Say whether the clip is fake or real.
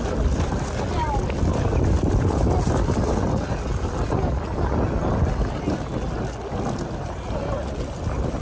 real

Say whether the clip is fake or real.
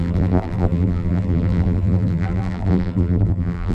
fake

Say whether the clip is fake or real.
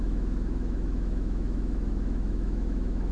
fake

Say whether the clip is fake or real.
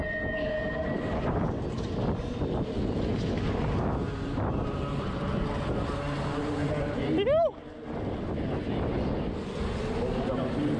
real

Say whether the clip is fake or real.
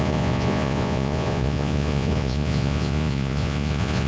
fake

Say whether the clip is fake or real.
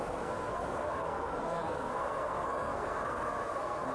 fake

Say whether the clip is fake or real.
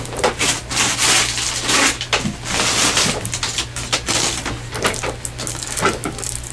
real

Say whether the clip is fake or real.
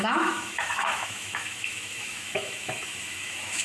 fake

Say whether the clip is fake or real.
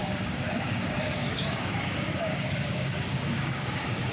fake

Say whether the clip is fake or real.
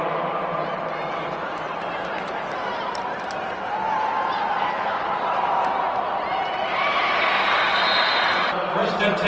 fake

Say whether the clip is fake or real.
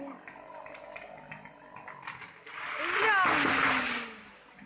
real